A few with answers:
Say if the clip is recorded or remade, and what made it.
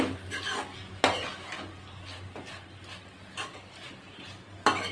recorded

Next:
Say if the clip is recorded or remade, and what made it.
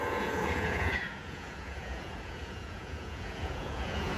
remade, vocoder, Vocos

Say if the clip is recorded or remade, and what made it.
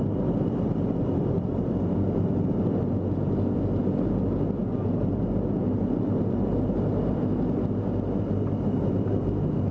recorded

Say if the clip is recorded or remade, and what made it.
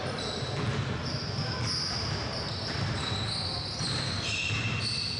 recorded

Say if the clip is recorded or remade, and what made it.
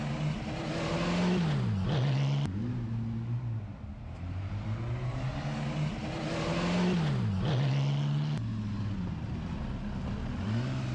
recorded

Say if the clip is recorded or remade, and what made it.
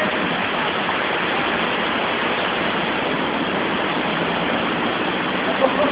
recorded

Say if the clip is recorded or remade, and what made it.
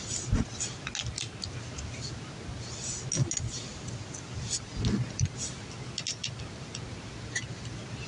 recorded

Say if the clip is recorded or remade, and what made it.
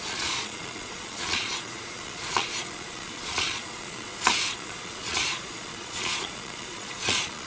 remade, vocoder, Vocos